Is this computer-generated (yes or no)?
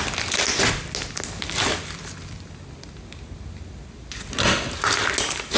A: no